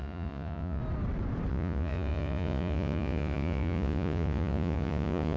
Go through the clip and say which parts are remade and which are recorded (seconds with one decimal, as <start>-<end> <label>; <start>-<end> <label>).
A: 0.0-0.8 remade; 0.8-1.5 recorded; 1.5-5.4 remade